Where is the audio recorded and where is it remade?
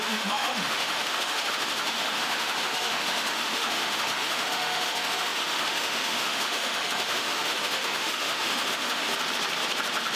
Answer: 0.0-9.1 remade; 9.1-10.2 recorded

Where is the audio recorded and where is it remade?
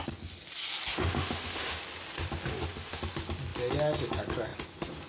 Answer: 0.0-0.9 recorded; 0.9-1.8 remade; 1.8-2.5 recorded; 2.5-3.0 remade; 3.0-5.1 recorded